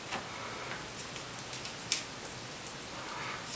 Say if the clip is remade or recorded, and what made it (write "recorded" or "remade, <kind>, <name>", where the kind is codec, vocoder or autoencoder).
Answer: recorded